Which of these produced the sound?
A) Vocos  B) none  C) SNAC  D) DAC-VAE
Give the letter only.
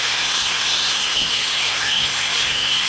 C